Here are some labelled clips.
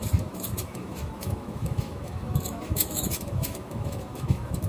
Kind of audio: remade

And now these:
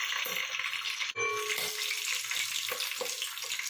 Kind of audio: recorded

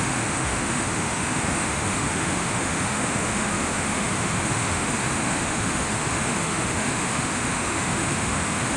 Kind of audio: remade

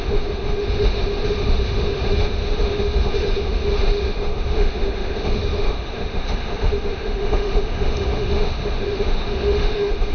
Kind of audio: remade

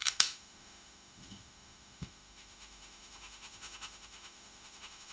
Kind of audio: remade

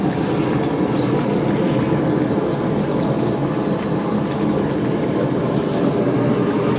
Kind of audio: recorded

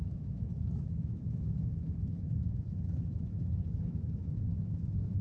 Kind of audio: remade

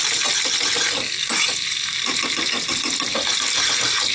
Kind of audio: recorded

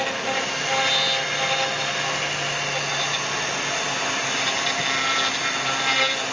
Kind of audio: recorded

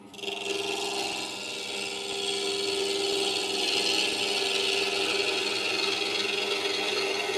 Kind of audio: recorded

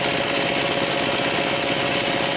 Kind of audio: recorded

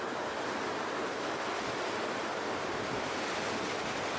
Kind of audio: recorded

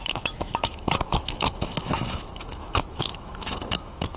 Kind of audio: remade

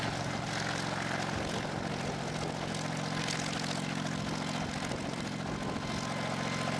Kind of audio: recorded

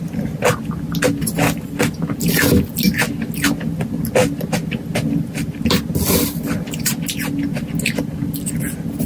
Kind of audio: recorded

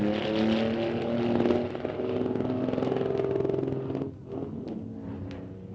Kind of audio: recorded